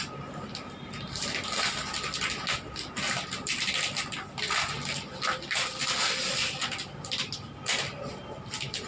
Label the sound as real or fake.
real